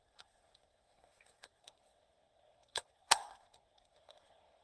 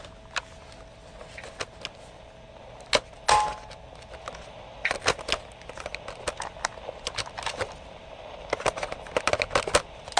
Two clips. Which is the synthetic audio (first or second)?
first